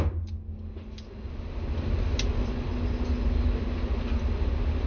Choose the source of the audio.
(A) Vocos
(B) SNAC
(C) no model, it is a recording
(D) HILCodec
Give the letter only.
C